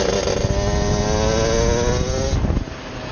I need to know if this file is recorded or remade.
recorded